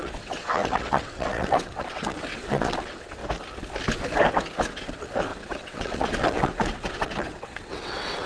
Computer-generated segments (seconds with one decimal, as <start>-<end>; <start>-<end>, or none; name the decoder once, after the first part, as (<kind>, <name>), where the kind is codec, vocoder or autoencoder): 0.0-3.2 (vocoder, WaveNeXt); 4.6-8.3